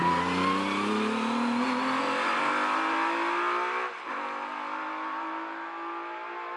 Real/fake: real